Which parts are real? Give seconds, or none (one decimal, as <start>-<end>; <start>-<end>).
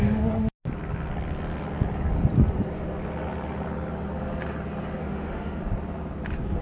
0.0-5.0; 5.6-6.6